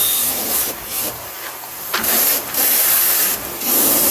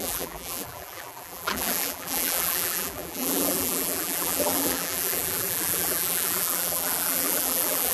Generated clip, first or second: second